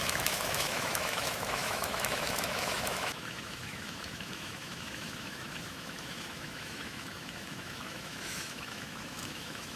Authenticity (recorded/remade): remade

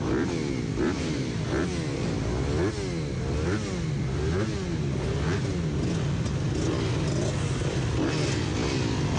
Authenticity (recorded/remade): recorded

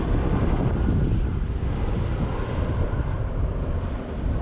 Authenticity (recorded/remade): recorded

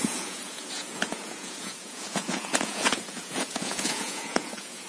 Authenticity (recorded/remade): remade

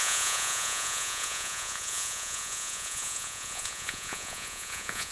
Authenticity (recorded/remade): remade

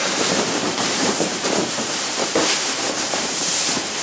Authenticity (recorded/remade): remade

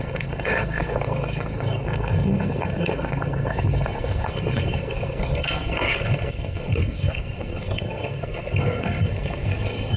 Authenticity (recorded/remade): remade